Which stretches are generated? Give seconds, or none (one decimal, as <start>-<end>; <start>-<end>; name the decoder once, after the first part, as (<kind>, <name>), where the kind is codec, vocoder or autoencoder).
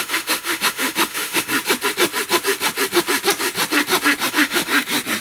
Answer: 0.0-1.5 (autoencoder, DAC-VAE); 4.3-4.7